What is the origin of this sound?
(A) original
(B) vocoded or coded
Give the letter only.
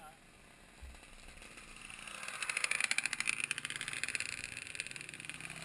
A